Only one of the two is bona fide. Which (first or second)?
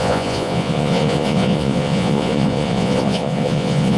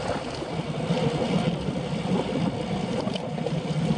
second